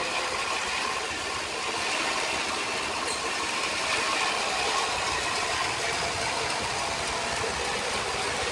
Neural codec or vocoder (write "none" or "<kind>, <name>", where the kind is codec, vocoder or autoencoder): none